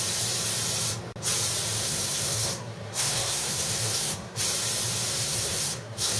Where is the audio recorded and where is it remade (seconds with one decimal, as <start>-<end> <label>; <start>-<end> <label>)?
0.0-1.8 recorded; 1.8-4.4 remade; 4.4-5.1 recorded; 5.1-6.2 remade